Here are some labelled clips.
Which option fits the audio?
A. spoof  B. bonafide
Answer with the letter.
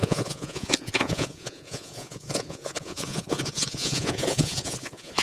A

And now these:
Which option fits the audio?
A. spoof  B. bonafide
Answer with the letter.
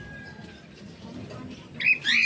B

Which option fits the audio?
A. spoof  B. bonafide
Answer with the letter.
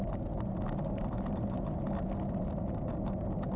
B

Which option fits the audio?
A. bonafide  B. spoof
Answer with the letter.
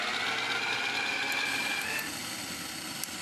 A